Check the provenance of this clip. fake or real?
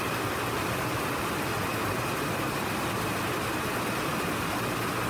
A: real